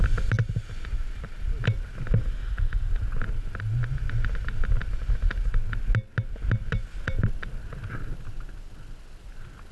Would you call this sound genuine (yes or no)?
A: yes